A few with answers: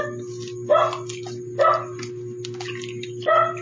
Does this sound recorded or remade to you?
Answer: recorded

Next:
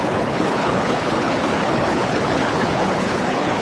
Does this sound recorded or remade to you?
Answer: remade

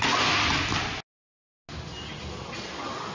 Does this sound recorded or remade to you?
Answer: recorded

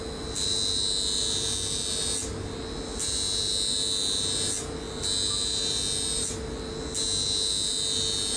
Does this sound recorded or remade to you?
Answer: recorded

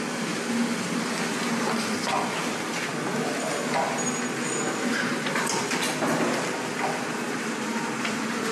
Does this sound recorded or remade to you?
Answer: recorded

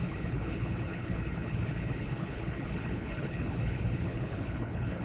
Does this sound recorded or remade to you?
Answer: remade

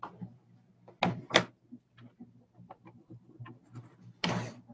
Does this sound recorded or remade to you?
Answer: recorded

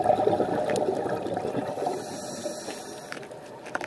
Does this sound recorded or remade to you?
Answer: recorded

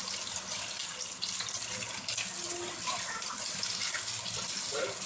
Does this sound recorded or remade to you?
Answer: recorded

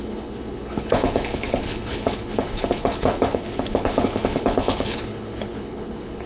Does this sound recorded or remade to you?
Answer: remade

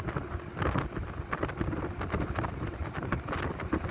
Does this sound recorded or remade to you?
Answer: recorded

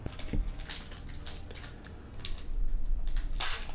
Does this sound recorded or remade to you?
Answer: recorded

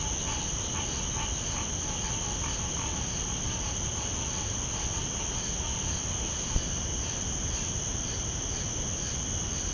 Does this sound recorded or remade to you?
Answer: recorded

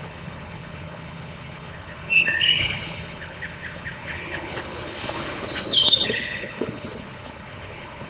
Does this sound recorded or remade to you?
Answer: remade